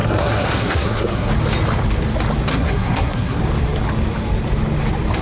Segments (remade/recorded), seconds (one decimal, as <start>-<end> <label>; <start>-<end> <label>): 0.0-1.3 remade; 1.3-2.5 recorded; 2.5-3.4 remade; 3.4-5.2 recorded